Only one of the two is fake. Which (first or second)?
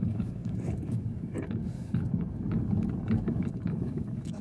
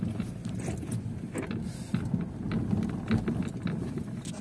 first